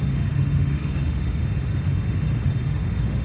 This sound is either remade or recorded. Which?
remade